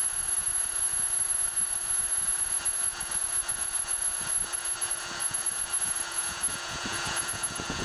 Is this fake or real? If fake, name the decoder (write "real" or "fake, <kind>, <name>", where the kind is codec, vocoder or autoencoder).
fake, vocoder, Vocos